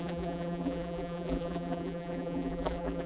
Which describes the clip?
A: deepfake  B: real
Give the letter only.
A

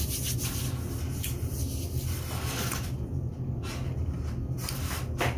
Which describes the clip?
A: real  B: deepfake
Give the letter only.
A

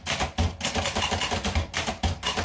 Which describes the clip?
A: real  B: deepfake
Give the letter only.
A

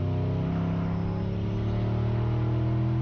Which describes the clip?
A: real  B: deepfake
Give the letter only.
A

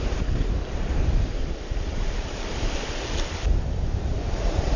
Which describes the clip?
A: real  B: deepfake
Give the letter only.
B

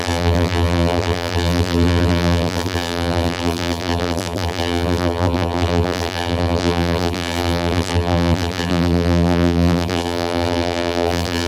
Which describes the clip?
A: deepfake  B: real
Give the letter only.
A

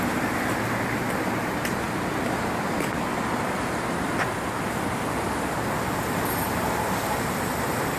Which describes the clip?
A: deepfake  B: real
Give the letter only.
B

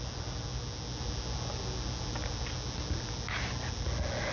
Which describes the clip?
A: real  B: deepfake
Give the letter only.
A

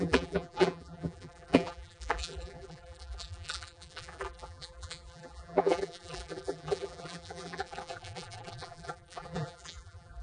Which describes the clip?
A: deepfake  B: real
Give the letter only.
A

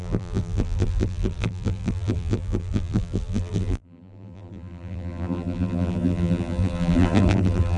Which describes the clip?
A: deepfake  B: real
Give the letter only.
A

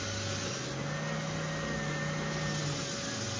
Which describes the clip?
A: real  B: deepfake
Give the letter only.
A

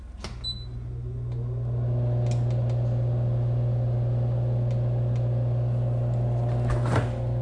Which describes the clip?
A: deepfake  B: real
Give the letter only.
B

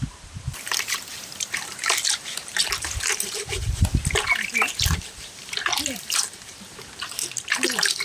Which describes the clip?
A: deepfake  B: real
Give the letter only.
A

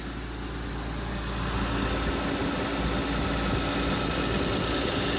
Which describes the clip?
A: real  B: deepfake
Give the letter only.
A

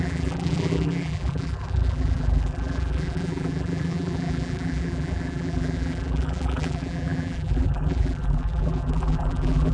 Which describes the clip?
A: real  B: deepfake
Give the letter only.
B